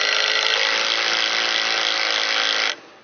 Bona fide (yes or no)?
yes